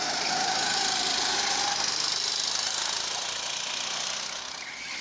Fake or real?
real